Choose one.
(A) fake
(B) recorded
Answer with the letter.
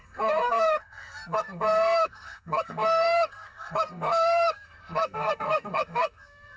A